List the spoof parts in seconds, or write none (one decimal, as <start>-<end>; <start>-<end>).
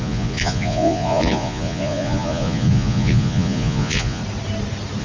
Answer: 0.0-4.2